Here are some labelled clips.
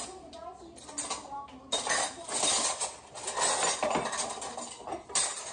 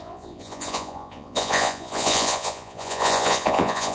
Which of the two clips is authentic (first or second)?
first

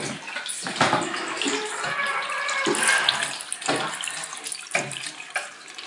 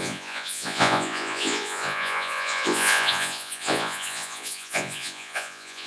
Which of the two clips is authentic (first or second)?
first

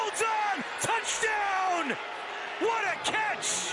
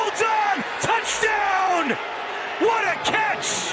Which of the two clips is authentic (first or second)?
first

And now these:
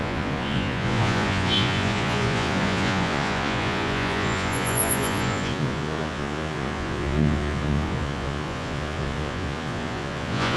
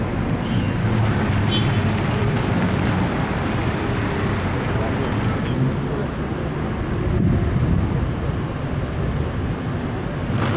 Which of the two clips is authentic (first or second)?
second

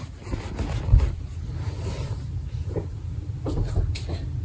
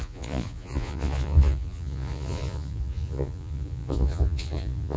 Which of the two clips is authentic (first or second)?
first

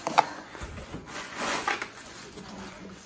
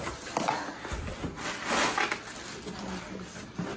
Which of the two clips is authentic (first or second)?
second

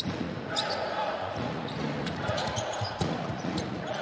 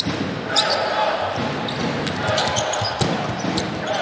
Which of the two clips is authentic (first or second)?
second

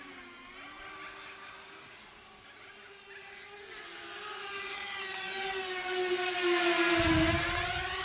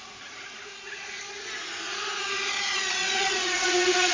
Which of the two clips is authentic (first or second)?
first